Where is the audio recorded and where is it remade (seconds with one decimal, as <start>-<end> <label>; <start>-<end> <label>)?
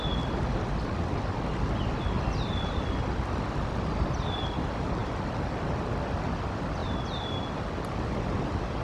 0.0-8.8 recorded